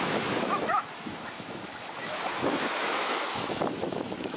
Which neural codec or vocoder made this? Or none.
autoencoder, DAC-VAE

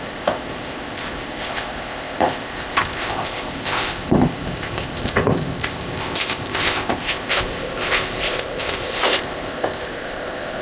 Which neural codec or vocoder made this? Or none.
codec, ZipCodec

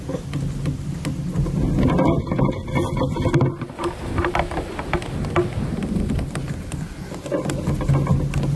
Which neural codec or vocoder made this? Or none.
none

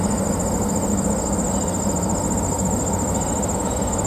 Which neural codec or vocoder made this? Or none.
none